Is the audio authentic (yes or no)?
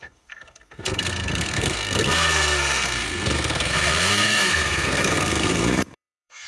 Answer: no